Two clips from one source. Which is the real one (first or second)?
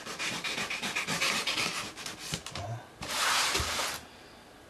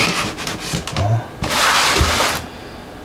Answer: second